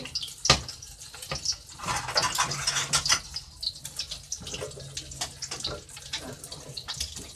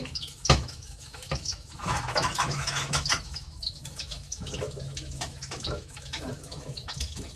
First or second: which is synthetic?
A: second